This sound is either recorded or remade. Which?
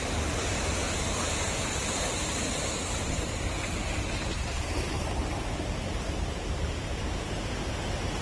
remade